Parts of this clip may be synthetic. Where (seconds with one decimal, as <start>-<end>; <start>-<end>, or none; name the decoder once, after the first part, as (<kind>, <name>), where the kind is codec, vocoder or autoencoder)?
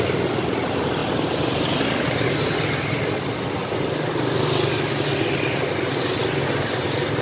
none